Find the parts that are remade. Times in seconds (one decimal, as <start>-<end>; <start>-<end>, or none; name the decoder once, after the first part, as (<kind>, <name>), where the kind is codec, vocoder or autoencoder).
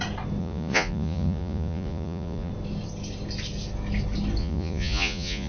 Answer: 0.4-2.5 (vocoder, Vocos); 4.4-5.5